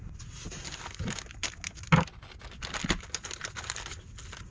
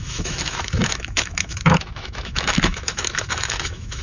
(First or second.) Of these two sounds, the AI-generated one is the second